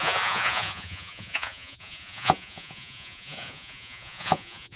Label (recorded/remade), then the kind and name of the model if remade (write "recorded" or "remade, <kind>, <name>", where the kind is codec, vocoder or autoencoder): remade, vocoder, Vocos